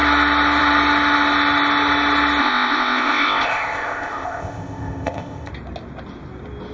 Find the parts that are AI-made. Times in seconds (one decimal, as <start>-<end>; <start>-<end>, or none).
2.4-5.5